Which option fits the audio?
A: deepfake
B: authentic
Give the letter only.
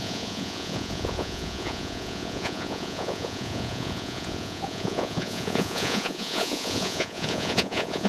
A